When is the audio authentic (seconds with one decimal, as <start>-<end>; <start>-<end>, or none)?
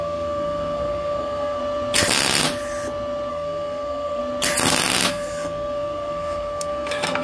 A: 1.6-3.3; 4.2-5.1